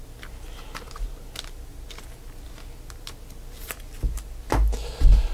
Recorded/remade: recorded